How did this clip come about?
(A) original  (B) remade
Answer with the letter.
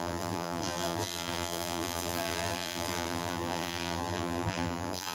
B